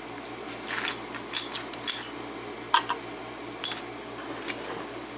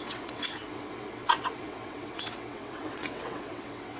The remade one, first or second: second